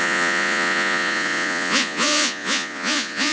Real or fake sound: fake